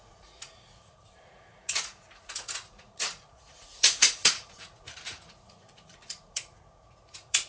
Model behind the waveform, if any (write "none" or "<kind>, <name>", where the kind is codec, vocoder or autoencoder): vocoder, Vocos